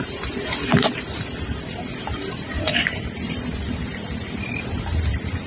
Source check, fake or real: fake